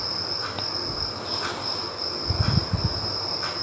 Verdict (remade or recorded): recorded